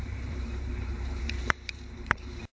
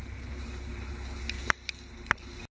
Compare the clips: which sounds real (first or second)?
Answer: second